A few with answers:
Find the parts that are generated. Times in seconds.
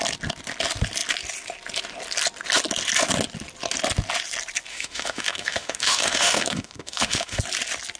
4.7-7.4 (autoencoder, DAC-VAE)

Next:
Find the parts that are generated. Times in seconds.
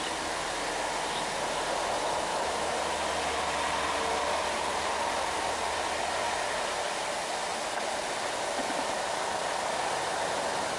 2.3-2.8 (autoencoder, DAC-VAE)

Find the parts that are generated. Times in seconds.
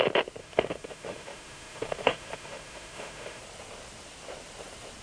0.4-3.4 (autoencoder, DAC-VAE)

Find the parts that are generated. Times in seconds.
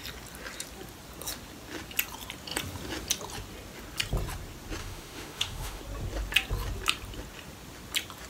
4.8-5.8 (autoencoder, DAC-VAE)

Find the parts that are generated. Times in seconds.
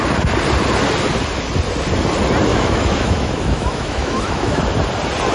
2.5-4.6 (autoencoder, DAC-VAE)